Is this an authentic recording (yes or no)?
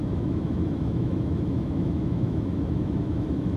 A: no